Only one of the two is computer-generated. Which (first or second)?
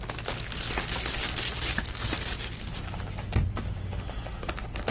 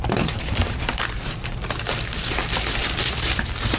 second